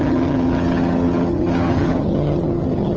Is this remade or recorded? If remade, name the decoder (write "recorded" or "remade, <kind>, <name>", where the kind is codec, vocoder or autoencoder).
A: remade, vocoder, HiFi-GAN